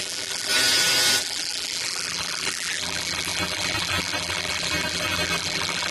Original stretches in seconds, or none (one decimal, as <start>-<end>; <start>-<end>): 0.5-1.2